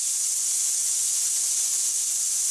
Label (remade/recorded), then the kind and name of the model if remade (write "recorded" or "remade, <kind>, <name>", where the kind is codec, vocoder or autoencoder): remade, vocoder, Vocos